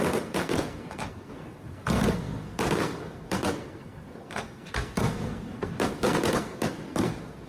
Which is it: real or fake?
fake